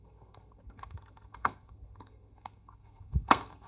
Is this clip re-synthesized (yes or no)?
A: yes